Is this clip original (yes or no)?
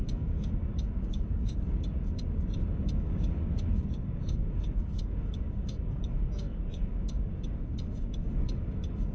no